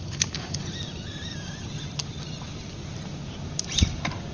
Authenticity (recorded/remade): recorded